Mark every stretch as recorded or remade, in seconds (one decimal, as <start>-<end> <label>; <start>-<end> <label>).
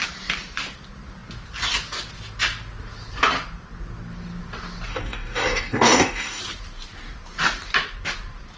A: 0.0-4.9 recorded; 4.9-6.4 remade; 6.4-8.6 recorded